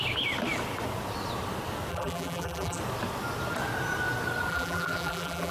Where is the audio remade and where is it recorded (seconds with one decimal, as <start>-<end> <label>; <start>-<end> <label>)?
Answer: 0.0-1.9 recorded; 1.9-2.8 remade; 2.8-4.5 recorded; 4.5-5.5 remade